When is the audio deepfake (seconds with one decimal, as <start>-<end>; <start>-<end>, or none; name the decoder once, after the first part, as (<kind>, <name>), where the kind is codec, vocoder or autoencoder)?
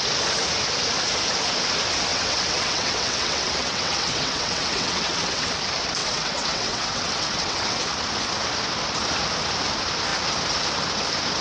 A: 2.1-5.5 (vocoder, WaveNeXt); 6.0-7.8